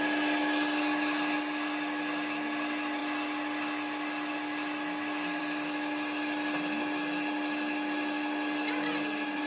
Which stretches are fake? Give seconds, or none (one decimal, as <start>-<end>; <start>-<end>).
none